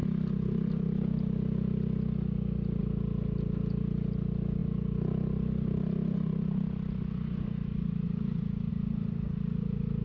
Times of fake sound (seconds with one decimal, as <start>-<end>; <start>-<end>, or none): none